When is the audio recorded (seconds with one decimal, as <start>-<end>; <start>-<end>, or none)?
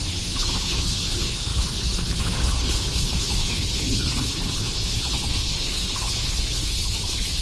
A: none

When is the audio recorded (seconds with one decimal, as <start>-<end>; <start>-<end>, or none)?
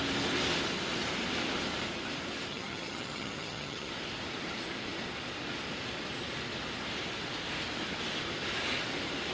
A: 0.0-2.5; 3.9-9.3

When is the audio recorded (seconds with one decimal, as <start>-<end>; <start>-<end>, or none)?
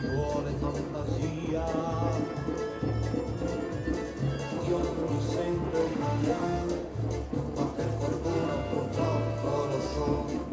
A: 0.0-5.8; 7.0-10.5